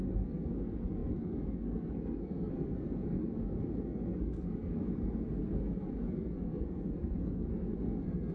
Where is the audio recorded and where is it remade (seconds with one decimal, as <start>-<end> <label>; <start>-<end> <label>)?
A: 0.0-8.3 remade

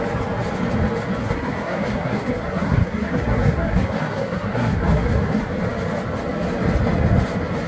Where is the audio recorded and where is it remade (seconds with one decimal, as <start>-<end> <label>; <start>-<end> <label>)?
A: 0.0-1.2 recorded; 1.2-5.4 remade; 5.4-7.7 recorded

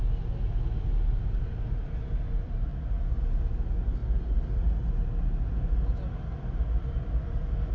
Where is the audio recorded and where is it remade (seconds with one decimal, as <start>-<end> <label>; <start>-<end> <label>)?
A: 0.0-7.7 recorded

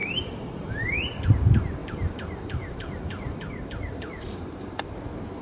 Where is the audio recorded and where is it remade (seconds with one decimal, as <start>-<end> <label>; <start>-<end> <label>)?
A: 0.0-1.2 remade; 1.2-1.8 recorded; 1.8-5.0 remade; 5.0-5.4 recorded

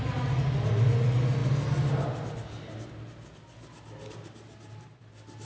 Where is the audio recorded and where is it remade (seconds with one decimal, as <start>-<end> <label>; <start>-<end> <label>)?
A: 0.0-5.5 recorded

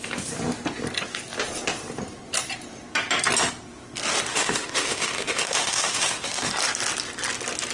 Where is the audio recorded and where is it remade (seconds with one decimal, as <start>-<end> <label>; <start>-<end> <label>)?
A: 0.0-4.3 recorded; 4.3-6.5 remade; 6.5-7.7 recorded